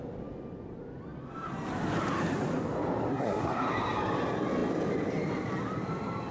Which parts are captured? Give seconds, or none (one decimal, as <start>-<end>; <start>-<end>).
0.0-3.1; 3.7-6.3